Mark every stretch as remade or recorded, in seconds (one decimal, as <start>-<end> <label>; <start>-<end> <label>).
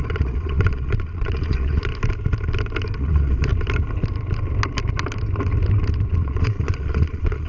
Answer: 0.0-1.9 remade; 1.9-3.0 recorded; 3.0-3.5 remade; 3.5-6.2 recorded; 6.2-7.5 remade